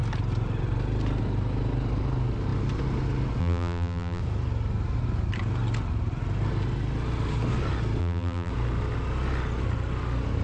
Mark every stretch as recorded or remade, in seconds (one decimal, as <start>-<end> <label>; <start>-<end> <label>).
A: 0.0-3.4 recorded; 3.4-4.2 remade; 4.2-8.0 recorded; 8.0-8.5 remade; 8.5-10.4 recorded